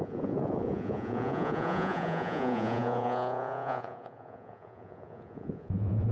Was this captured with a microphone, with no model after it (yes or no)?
no